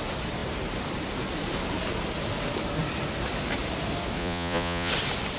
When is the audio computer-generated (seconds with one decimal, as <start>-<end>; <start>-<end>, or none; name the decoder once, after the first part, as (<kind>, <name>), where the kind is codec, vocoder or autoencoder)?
4.2-4.9 (vocoder, Vocos)